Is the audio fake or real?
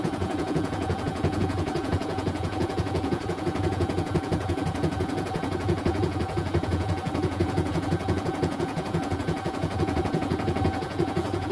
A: fake